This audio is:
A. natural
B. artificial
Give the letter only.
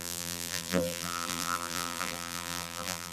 B